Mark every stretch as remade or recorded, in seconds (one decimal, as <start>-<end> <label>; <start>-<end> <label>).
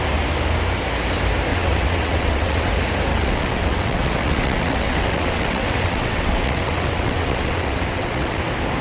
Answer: 0.0-1.5 recorded; 1.5-2.7 remade; 2.7-3.1 recorded; 3.1-8.4 remade; 8.4-8.8 recorded